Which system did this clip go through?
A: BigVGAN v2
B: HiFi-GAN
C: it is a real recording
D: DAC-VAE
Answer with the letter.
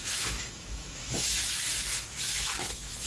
D